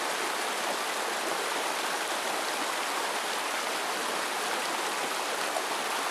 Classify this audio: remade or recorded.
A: recorded